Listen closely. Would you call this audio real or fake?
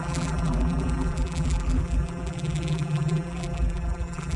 fake